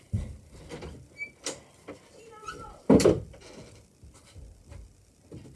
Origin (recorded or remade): recorded